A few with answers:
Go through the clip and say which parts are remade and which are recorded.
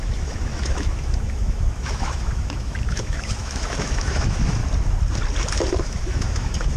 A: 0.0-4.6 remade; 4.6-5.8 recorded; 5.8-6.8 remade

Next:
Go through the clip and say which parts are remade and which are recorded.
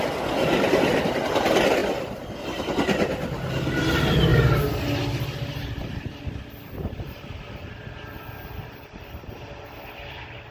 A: 0.0-10.5 recorded